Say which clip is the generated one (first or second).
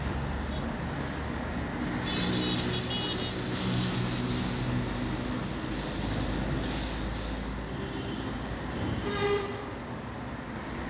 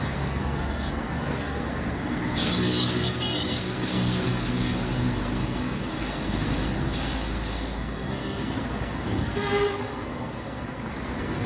second